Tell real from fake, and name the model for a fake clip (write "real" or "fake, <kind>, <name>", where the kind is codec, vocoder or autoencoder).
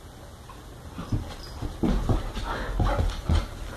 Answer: real